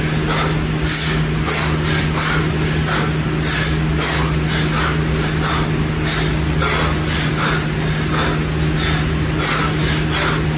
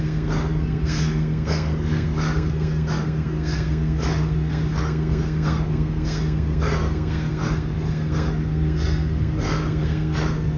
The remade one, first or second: second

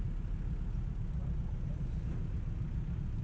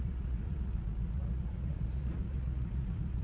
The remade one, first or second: second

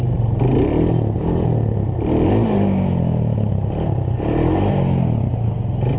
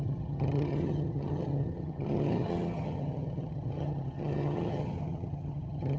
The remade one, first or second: second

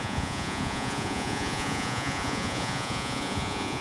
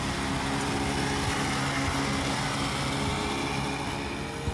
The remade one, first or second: first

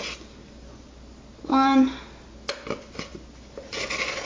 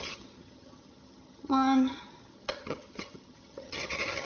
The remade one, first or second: second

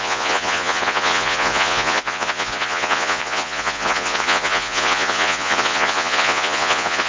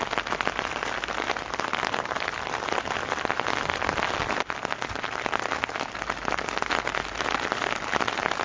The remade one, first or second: first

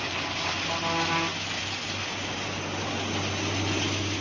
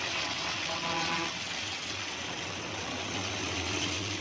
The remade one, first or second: second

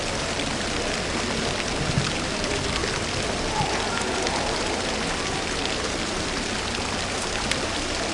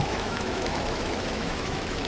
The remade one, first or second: second